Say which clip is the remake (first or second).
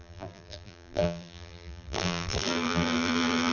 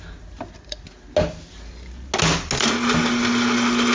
first